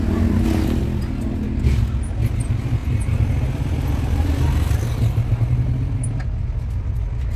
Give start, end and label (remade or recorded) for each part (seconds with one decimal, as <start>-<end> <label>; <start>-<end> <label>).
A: 0.0-7.4 recorded